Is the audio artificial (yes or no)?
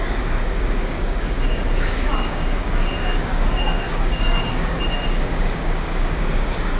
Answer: yes